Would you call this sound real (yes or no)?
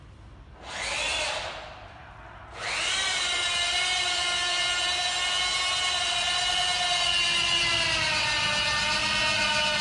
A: yes